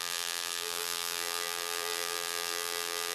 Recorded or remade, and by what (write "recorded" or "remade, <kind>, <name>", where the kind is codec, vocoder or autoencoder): remade, vocoder, BigVGAN v2